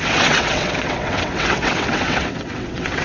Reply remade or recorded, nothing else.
remade